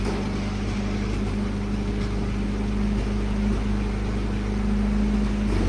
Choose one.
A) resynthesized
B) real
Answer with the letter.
B